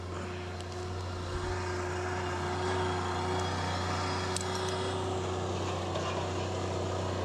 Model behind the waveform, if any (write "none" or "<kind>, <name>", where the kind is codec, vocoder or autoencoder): none